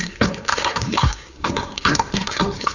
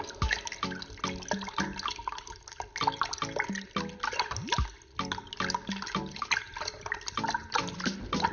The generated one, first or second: first